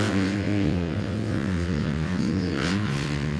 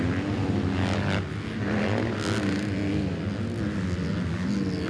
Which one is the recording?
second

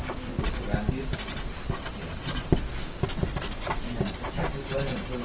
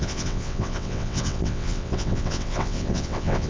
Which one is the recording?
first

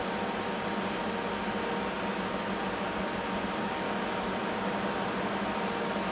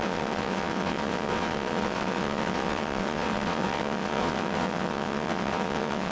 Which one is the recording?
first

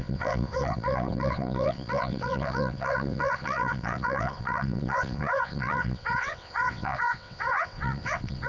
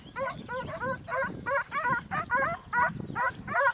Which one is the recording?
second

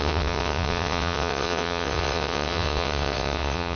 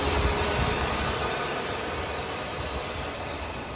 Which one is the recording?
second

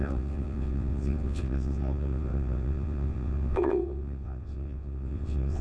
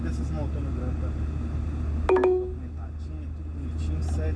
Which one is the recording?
second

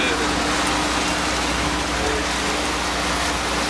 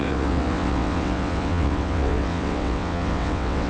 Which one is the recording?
first